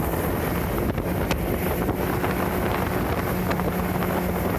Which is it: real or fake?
real